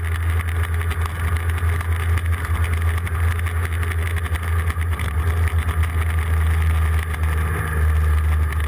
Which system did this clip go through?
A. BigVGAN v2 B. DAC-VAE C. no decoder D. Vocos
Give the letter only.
C